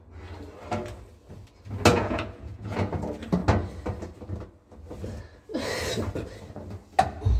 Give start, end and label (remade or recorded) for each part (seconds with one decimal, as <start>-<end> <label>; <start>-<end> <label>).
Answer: 0.0-1.9 recorded; 1.9-2.9 remade; 2.9-7.4 recorded